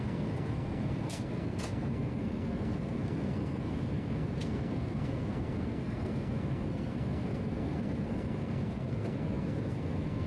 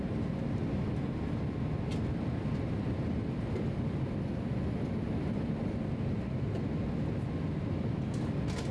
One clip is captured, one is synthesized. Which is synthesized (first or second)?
first